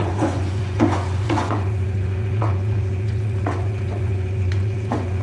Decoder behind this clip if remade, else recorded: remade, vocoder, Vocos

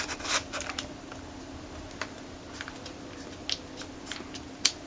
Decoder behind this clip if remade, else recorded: recorded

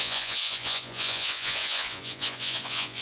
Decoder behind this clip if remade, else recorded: remade, vocoder, Vocos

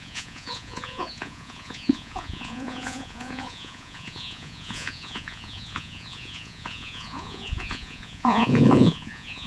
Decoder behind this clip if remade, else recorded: remade, vocoder, Vocos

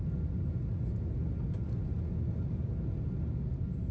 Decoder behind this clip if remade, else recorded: recorded